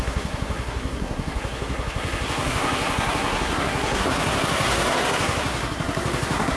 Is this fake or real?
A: fake